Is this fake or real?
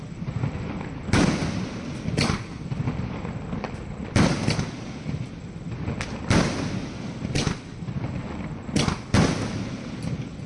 real